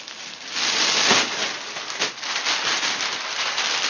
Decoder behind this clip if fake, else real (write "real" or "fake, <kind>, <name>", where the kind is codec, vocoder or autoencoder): real